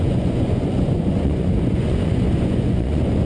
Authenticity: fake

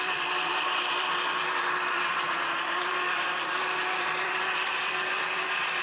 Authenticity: fake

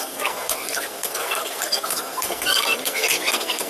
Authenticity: fake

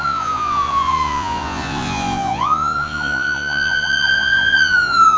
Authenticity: fake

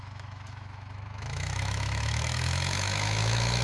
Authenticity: fake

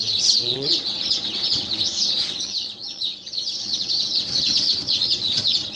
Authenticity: fake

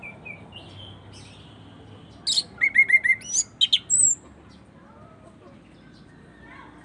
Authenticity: real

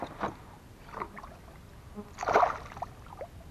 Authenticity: real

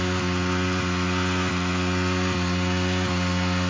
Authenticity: real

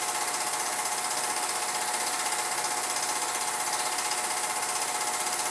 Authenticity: real